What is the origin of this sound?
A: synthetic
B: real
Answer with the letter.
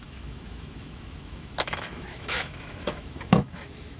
A